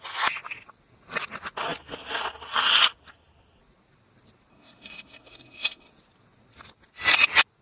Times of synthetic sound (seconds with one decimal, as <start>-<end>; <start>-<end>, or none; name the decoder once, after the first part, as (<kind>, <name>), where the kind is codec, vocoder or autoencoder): 4.5-5.9 (codec, SNAC)